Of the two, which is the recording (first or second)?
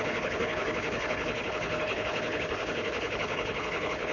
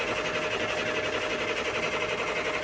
second